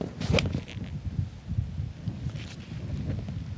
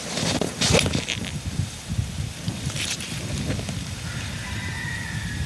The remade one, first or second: second